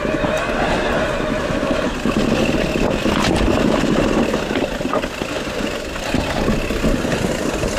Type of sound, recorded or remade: recorded